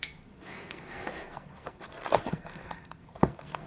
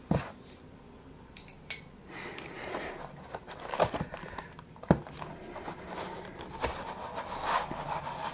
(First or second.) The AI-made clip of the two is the first